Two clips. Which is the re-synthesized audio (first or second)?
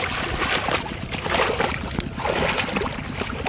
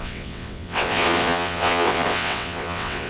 second